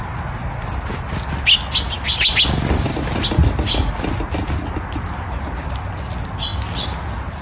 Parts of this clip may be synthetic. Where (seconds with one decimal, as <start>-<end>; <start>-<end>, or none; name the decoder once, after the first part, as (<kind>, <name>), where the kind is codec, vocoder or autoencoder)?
none